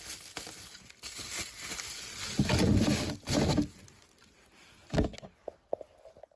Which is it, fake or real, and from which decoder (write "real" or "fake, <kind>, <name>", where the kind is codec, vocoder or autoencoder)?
real